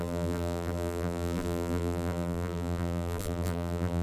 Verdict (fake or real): fake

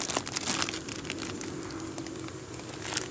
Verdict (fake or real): real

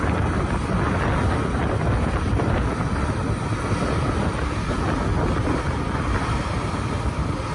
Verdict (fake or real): real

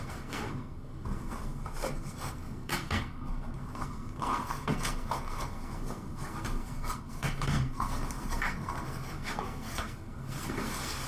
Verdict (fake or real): fake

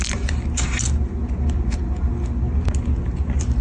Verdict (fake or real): real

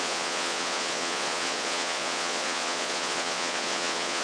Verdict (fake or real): fake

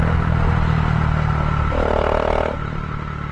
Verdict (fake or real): real